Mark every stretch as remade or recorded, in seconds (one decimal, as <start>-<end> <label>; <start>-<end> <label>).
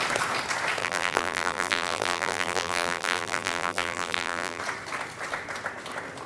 0.0-0.8 recorded; 0.8-4.6 remade; 4.6-6.3 recorded